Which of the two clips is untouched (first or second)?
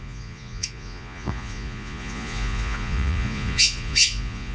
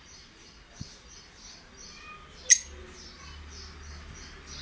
second